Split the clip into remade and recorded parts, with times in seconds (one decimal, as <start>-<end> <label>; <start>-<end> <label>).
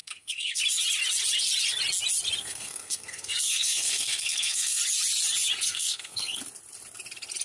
0.0-0.6 remade; 0.6-2.4 recorded; 2.4-4.8 remade; 4.8-5.7 recorded; 5.7-6.4 remade; 6.4-7.4 recorded